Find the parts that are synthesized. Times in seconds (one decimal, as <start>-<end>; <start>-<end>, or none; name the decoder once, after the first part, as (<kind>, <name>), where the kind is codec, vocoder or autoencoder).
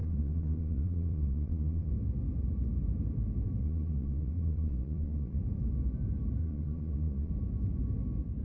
0.0-1.9 (vocoder, Vocos); 3.6-5.4; 6.4-7.3